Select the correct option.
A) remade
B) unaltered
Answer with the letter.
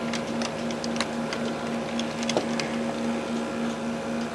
B